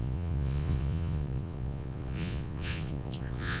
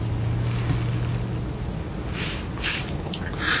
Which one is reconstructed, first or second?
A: first